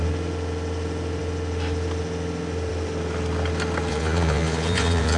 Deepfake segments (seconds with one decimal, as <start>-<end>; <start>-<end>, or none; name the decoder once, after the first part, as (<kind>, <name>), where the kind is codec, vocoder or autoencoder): 3.9-5.2 (vocoder, Vocos)